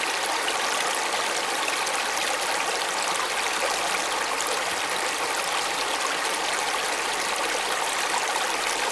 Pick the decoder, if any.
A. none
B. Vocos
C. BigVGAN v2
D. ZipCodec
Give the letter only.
C